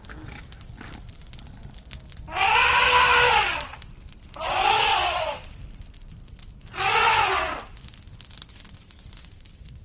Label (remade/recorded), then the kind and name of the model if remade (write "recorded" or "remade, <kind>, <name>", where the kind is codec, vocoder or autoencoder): recorded